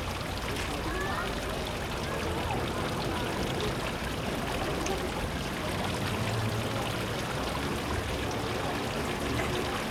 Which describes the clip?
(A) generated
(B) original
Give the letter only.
B